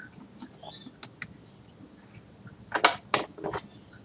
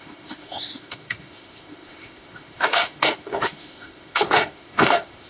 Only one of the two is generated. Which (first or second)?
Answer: second